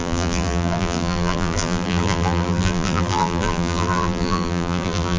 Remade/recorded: remade